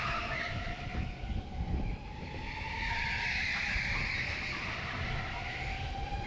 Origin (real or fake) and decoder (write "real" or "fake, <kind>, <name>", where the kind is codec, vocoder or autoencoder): real